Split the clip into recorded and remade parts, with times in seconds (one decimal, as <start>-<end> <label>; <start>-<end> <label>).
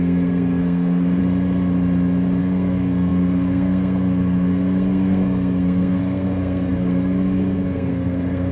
0.0-1.2 remade; 1.2-2.4 recorded; 2.4-8.5 remade